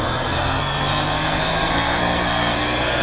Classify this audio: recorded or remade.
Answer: remade